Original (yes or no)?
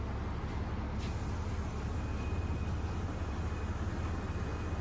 yes